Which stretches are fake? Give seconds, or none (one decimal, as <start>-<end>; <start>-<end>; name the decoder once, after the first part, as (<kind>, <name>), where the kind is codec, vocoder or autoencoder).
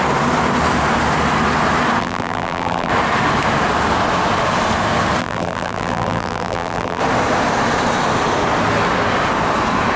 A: 2.0-2.9 (vocoder, BigVGAN v2); 5.2-7.0